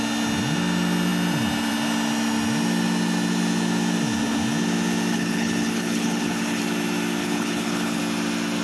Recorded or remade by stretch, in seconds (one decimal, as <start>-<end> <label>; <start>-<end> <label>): 0.0-5.1 recorded; 5.1-6.6 remade; 6.6-7.2 recorded; 7.2-8.0 remade; 8.0-8.6 recorded